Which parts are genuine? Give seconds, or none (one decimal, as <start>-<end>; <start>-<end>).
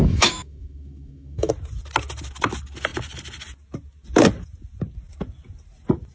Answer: 1.5-6.1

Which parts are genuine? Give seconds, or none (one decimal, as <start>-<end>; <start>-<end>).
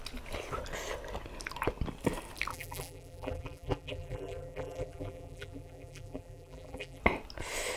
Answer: 0.0-2.5; 7.0-7.8